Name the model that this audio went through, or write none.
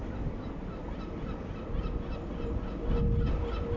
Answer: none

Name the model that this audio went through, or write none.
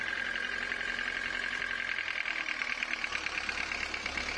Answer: none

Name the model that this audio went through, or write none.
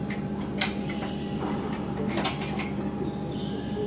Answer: none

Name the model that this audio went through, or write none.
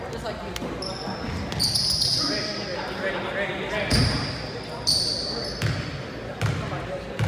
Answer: none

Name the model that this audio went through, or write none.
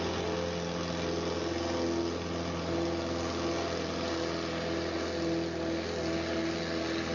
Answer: none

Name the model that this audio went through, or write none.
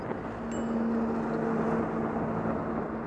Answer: none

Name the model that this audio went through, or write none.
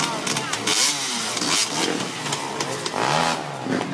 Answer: none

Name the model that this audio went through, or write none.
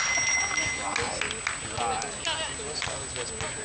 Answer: none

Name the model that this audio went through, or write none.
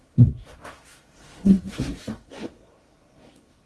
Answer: codec, SNAC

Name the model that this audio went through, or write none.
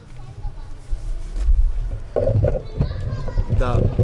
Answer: none